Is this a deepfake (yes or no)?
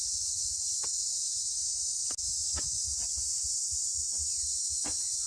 no